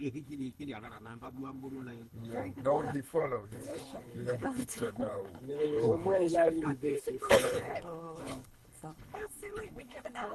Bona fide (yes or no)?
no